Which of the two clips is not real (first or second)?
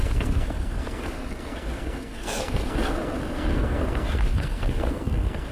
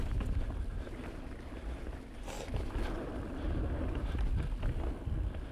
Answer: first